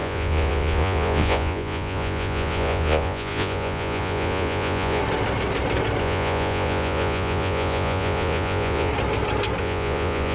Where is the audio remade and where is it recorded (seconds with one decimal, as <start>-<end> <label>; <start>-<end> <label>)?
0.0-5.0 remade; 5.0-6.0 recorded; 6.0-8.9 remade; 8.9-9.6 recorded; 9.6-10.3 remade